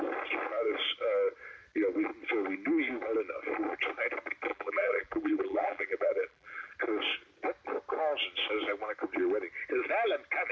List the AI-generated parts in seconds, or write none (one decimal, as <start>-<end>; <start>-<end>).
4.5-6.7